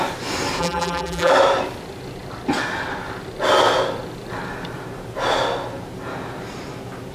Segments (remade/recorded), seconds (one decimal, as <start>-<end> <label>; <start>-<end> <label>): 0.0-0.6 recorded; 0.6-1.3 remade; 1.3-7.1 recorded